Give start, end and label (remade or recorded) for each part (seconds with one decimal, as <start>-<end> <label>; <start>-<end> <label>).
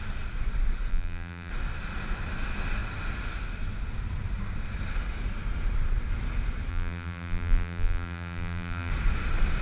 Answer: 0.0-0.9 recorded; 0.9-1.5 remade; 1.5-6.7 recorded; 6.7-8.9 remade; 8.9-9.6 recorded